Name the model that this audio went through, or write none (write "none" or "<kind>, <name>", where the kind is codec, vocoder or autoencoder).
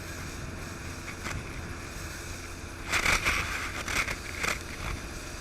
none